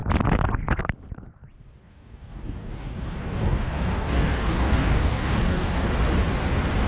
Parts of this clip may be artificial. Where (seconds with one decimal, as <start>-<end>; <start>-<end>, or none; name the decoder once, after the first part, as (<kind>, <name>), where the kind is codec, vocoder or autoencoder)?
1.8-5.9 (codec, DAC)